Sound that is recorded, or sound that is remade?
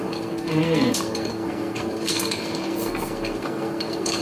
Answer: remade